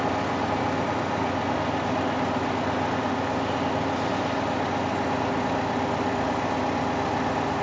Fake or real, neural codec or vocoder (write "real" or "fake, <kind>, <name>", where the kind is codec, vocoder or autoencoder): real